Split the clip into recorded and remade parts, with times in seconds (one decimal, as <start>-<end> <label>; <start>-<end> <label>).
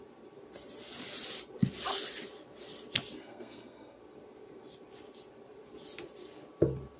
0.0-3.2 recorded; 3.2-4.0 remade; 4.0-7.0 recorded